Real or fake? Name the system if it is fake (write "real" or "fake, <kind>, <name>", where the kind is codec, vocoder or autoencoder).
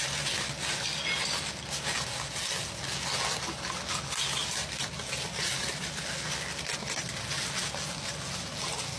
real